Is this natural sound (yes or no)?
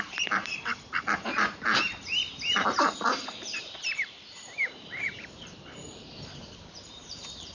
no